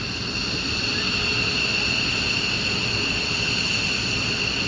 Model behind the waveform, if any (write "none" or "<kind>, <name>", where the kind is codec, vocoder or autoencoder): none